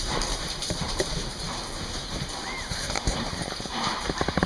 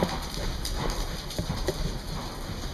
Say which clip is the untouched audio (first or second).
second